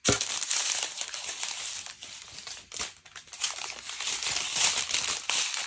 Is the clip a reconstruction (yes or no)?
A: no